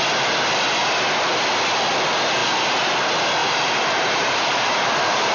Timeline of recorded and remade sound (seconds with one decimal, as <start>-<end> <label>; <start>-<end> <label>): 0.0-2.4 recorded; 2.4-2.9 remade; 2.9-3.4 recorded; 3.4-5.3 remade